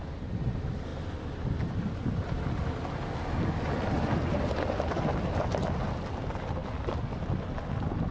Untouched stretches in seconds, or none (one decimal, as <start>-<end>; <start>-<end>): 0.0-8.1